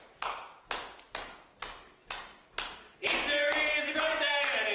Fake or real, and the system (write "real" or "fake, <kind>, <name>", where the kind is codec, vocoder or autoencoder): real